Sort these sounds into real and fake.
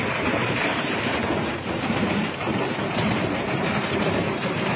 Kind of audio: fake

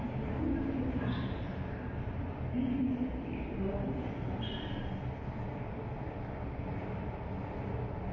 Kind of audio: real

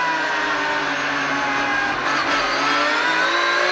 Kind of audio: real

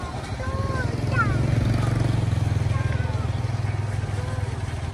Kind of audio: real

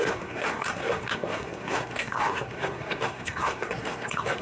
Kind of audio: fake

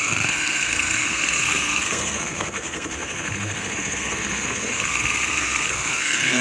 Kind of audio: fake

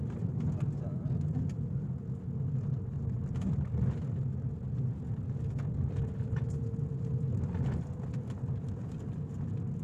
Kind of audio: real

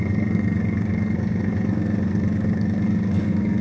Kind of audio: fake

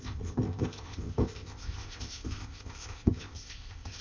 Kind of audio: fake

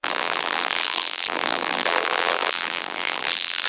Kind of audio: fake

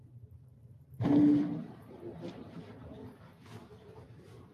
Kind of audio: fake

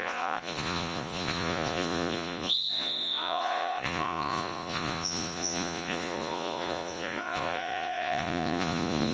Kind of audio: fake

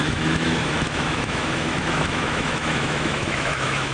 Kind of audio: fake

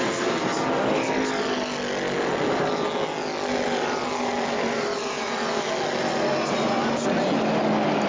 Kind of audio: real